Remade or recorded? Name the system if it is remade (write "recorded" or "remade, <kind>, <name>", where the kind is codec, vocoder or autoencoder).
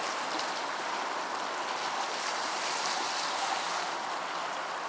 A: recorded